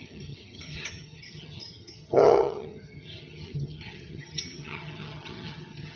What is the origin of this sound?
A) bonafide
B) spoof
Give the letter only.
B